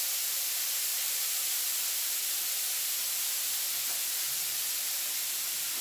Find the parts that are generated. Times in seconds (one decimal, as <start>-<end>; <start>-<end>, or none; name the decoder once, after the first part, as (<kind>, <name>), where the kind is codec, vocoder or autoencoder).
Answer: 0.9-1.7 (vocoder, BigVGAN v2); 4.0-5.1